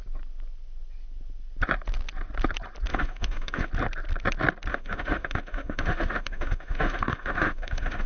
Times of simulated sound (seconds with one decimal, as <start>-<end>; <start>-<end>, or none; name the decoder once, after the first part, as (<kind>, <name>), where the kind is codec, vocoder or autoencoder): 2.9-3.7 (autoencoder, DAC-VAE); 4.7-8.1